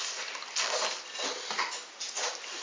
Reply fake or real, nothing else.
real